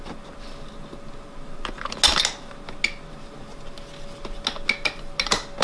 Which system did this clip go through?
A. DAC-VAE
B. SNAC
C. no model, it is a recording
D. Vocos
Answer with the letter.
C